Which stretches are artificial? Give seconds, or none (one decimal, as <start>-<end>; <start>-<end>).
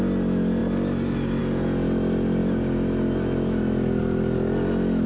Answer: none